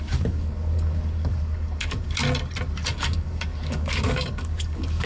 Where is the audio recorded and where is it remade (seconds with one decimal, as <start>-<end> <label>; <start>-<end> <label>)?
0.0-2.2 remade; 2.2-2.9 recorded; 2.9-5.1 remade